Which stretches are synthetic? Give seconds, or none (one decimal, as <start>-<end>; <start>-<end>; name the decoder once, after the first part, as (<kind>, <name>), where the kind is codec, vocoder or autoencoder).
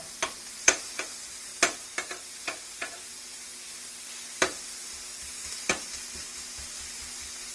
0.0-1.5 (vocoder, BigVGAN v2); 2.3-3.5; 5.5-7.5